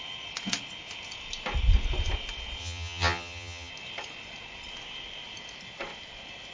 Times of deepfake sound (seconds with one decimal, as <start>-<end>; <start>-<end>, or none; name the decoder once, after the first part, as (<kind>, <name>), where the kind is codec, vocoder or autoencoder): 2.6-3.7 (vocoder, HiFi-GAN)